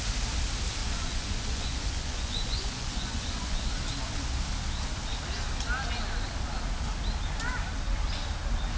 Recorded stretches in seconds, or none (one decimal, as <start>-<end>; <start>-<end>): 0.0-0.8; 3.7-8.8